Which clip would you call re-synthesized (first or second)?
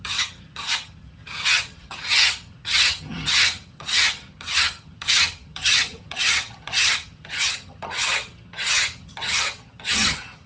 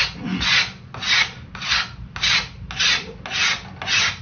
first